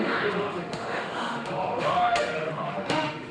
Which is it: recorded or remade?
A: remade